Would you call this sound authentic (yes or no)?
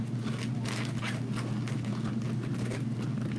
yes